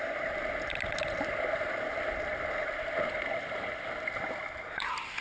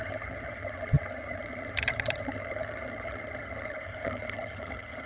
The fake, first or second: second